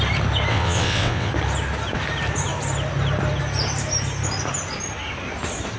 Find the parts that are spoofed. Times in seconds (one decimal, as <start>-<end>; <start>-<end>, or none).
0.5-1.3